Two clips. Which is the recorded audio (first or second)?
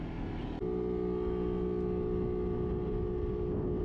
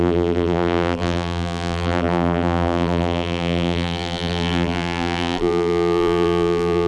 first